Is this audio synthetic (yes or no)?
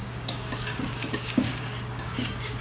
yes